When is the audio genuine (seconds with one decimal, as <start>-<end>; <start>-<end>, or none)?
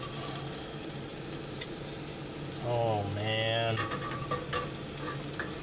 0.0-5.6